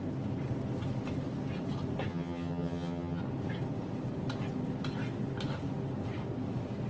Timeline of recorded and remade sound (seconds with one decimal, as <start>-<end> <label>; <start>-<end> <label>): 0.0-2.1 recorded; 2.1-3.2 remade; 3.2-6.9 recorded

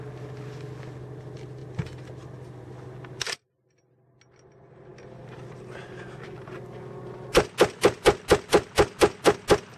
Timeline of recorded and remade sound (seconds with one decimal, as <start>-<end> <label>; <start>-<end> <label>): 0.0-9.8 recorded